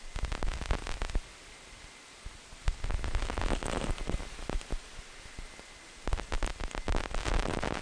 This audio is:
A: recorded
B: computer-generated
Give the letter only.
A